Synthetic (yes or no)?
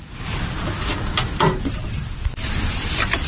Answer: no